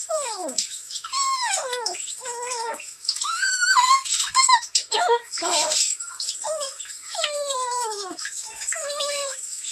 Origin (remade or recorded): remade